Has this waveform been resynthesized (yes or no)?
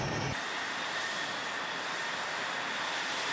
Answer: no